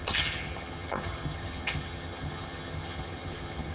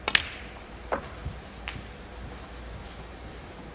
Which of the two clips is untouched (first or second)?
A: second